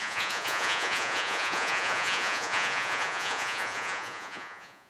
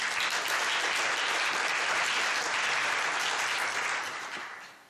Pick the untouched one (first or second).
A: second